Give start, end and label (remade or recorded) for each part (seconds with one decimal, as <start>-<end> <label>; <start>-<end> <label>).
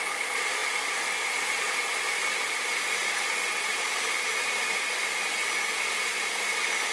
0.0-6.9 recorded